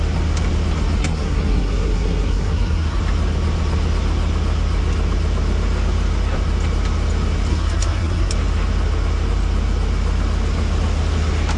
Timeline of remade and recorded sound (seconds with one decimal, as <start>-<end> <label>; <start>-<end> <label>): 0.0-1.0 recorded; 1.0-3.0 remade; 3.0-7.5 recorded; 7.5-8.3 remade; 8.3-11.6 recorded

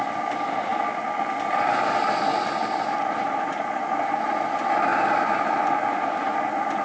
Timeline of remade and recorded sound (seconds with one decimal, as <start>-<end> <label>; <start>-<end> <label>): 0.0-6.8 recorded

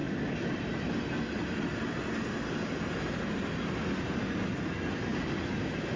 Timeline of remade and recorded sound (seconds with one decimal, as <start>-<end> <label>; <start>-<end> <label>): 0.0-6.0 recorded

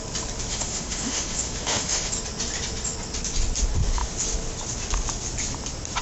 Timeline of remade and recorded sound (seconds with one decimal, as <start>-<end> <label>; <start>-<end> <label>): 0.0-0.5 recorded; 0.5-2.1 remade; 2.1-6.0 recorded

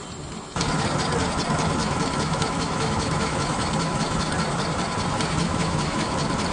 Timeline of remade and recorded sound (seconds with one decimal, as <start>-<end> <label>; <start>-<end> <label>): 0.0-1.8 recorded; 1.8-4.3 remade; 4.3-5.4 recorded; 5.4-6.1 remade; 6.1-6.5 recorded

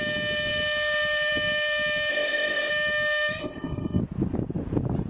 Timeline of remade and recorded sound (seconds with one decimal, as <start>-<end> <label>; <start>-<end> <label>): 0.0-2.1 recorded; 2.1-2.7 remade; 2.7-3.4 recorded; 3.4-4.0 remade; 4.0-5.1 recorded